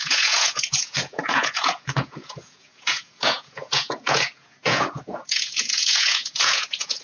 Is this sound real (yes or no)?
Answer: no